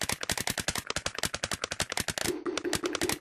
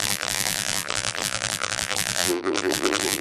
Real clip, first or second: first